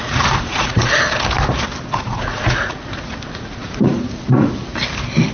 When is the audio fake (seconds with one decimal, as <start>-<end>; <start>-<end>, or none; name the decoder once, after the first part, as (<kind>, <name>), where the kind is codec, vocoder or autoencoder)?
0.0-0.9 (vocoder, Vocos); 1.9-4.5